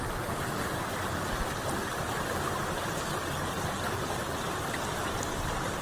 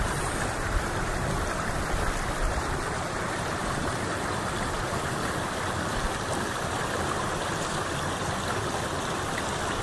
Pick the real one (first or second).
first